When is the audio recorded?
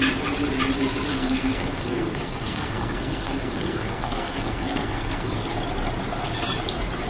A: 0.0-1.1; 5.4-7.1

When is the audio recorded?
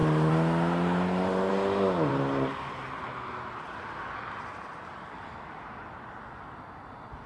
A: 0.0-7.3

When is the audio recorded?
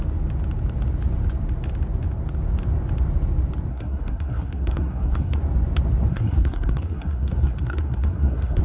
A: 0.0-3.7; 5.4-6.1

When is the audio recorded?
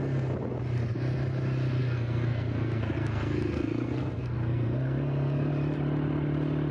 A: 0.0-1.8; 5.5-6.7